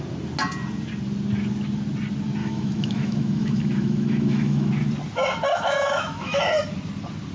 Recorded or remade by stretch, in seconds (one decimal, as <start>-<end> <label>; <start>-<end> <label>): 0.0-2.4 recorded; 2.4-4.7 remade; 4.7-5.5 recorded; 5.5-6.4 remade; 6.4-7.3 recorded